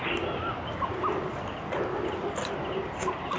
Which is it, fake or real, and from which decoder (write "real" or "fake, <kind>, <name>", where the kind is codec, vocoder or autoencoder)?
real